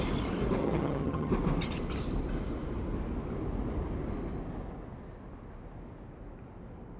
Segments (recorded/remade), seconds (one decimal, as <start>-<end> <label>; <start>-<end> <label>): 0.0-0.6 recorded; 0.6-1.3 remade; 1.3-7.0 recorded